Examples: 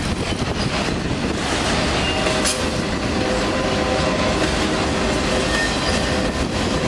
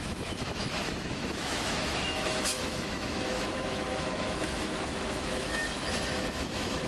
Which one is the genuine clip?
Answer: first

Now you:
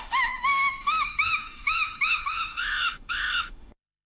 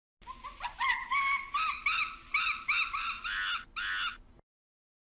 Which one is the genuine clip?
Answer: second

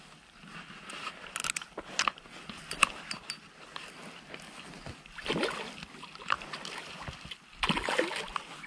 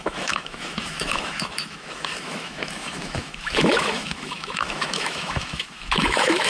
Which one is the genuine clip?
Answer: first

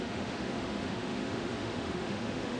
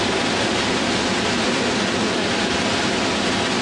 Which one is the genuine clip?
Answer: second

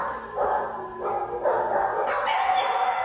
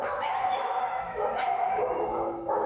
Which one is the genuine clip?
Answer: first